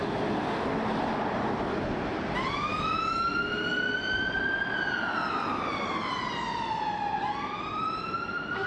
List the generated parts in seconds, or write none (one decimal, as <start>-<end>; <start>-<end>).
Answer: 2.7-3.3